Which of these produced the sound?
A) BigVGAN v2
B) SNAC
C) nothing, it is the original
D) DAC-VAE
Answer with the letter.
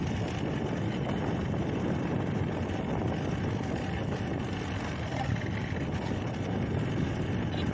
C